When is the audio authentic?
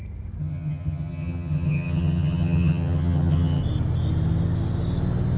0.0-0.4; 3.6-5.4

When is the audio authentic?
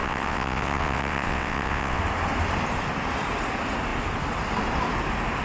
2.0-5.4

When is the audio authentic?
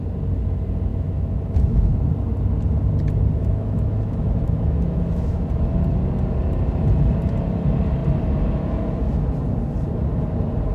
0.0-0.9; 2.1-3.4; 5.4-10.7